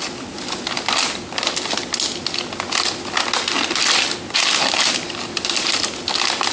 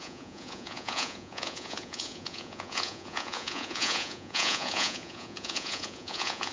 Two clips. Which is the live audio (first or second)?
first